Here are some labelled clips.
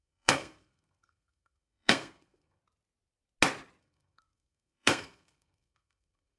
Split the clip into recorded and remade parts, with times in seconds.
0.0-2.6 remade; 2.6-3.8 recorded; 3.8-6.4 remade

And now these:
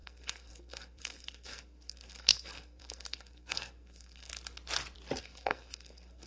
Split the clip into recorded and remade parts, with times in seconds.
0.0-4.3 remade; 4.3-5.2 recorded; 5.2-6.3 remade

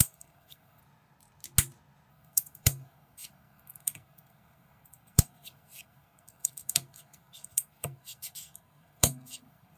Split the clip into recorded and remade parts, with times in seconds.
0.0-0.8 remade; 0.8-2.1 recorded; 2.1-9.8 remade